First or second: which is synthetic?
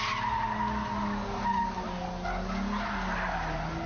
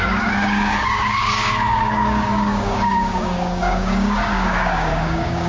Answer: second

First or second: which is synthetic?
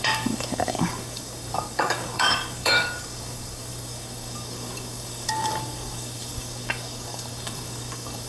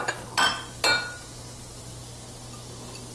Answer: first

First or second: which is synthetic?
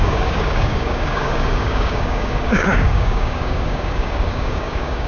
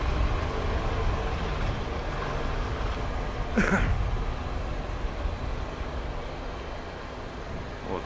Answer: first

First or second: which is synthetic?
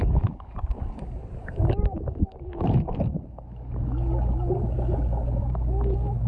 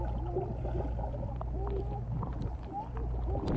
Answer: first